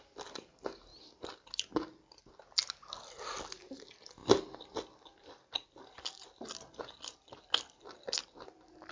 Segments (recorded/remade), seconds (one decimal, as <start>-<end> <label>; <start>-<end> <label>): 0.0-8.9 recorded